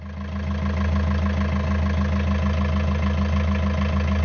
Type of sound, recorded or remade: recorded